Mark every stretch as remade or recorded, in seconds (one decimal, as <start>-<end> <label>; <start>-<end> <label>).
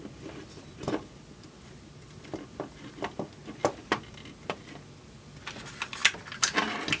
0.0-7.0 recorded